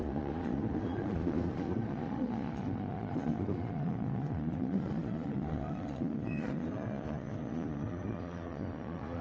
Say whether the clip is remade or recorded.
remade